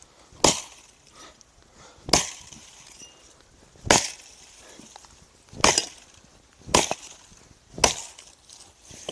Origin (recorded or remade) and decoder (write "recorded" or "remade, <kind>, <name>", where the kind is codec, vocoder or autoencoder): recorded